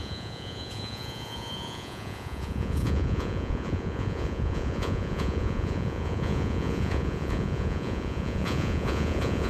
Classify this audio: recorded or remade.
remade